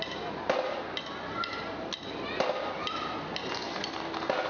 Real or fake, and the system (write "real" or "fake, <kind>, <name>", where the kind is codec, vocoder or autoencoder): real